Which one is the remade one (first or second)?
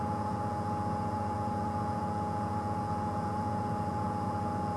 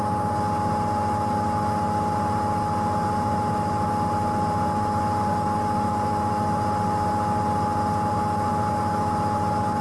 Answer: first